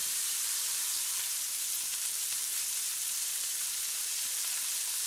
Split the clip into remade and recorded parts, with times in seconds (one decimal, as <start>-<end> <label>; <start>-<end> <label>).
0.0-1.4 remade; 1.4-1.9 recorded; 1.9-5.1 remade